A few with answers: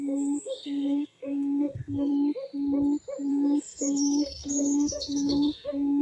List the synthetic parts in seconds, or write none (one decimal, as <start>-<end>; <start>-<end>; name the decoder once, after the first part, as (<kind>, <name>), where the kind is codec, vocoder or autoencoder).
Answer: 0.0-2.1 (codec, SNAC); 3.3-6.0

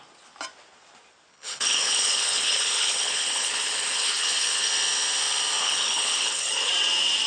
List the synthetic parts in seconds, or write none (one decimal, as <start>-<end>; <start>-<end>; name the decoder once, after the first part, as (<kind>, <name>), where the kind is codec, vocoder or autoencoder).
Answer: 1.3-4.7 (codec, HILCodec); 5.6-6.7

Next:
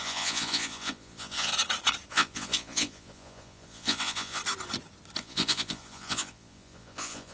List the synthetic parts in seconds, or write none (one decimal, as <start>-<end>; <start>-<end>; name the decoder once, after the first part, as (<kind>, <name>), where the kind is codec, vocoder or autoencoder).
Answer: 0.0-1.5 (vocoder, Vocos); 2.1-4.4; 5.2-7.3